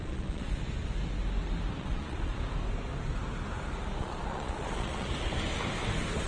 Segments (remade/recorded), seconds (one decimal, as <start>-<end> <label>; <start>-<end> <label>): 0.0-0.6 remade; 0.6-1.8 recorded; 1.8-2.4 remade; 2.4-4.0 recorded; 4.0-5.1 remade; 5.1-6.3 recorded